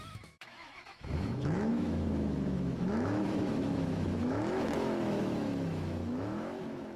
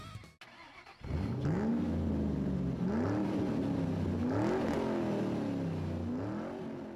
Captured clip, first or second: second